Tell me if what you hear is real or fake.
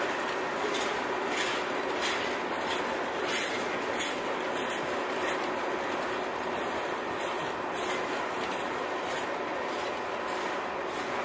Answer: real